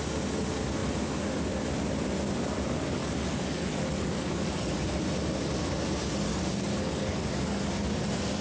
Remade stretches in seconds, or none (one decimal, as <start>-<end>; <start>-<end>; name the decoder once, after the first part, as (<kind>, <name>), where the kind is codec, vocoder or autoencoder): 3.0-4.8 (codec, DAC); 6.3-7.6